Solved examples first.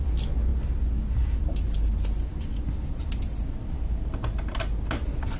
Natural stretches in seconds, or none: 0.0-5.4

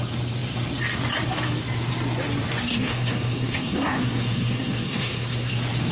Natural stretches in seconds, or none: 0.0-2.7; 5.5-5.9

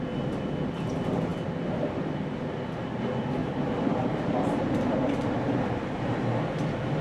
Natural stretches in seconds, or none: 0.0-3.4; 6.2-7.0

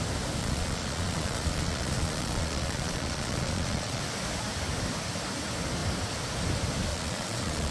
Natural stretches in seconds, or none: 0.0-0.4; 4.0-6.9

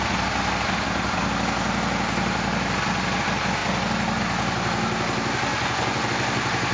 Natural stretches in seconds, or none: 0.0-5.5; 6.1-6.7

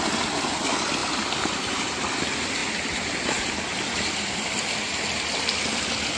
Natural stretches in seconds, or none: 0.0-6.2

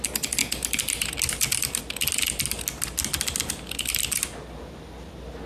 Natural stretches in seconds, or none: 0.0-5.5